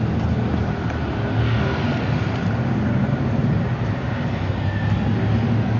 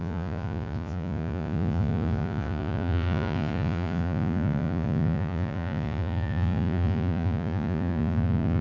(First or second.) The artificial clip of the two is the second